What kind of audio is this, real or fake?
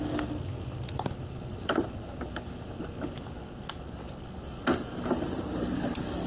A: real